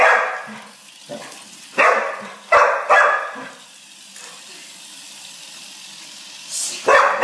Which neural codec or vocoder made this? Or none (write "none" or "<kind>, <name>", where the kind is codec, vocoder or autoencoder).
none